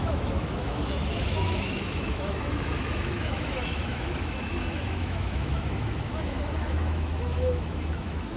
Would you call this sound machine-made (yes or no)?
yes